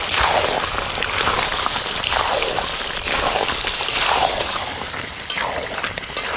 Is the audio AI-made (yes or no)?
no